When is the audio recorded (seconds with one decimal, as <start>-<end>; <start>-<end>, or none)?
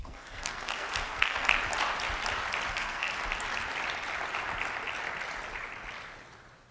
1.5-2.7; 3.1-6.7